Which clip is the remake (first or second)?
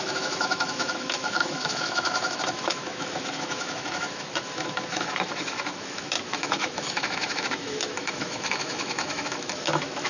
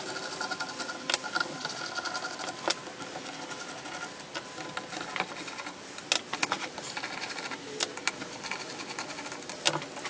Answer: first